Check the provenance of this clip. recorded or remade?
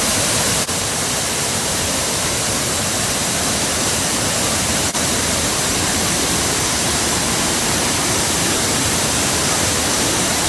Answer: remade